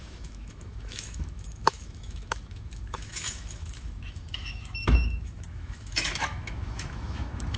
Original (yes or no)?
no